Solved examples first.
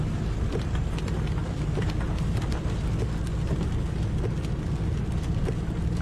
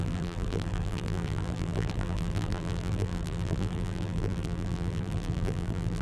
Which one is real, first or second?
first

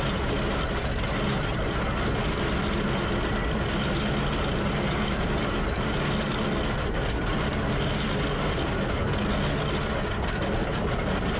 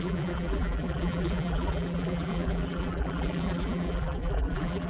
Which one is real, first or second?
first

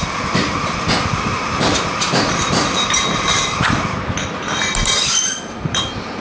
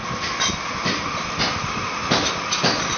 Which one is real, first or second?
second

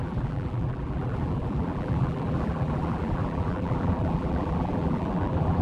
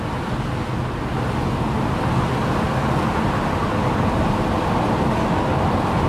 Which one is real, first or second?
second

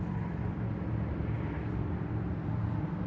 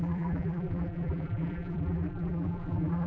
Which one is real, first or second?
first